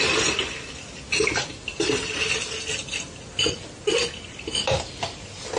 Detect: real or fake real